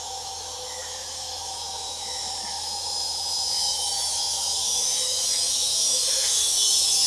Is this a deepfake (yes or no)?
yes